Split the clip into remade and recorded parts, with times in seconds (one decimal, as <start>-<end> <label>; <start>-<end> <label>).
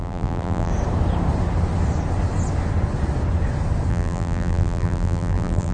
0.0-0.7 remade; 0.7-3.9 recorded; 3.9-5.7 remade